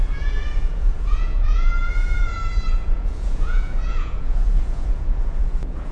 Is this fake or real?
fake